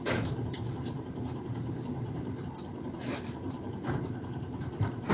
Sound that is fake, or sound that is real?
fake